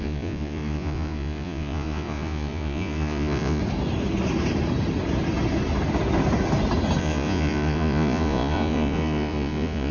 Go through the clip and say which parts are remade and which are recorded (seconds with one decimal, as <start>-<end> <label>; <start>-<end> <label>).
0.0-3.6 remade; 3.6-7.0 recorded; 7.0-9.9 remade